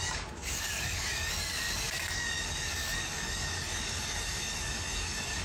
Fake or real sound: fake